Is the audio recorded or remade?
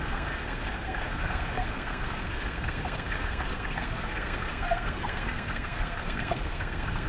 remade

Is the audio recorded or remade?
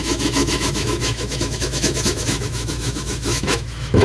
remade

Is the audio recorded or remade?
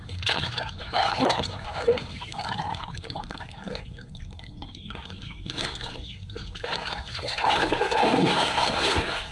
remade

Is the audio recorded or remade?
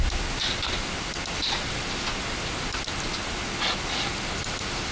recorded